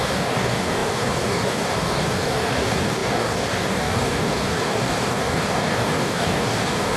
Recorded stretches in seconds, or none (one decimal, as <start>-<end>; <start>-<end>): none